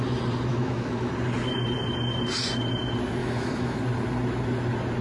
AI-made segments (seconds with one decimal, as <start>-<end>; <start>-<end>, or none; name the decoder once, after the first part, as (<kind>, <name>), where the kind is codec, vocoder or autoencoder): 0.5-1.1 (autoencoder, DAC-VAE); 3.2-3.8